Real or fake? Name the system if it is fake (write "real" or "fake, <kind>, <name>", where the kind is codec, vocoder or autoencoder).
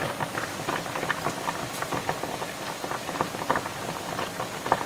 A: real